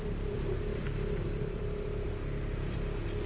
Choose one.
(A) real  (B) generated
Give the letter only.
B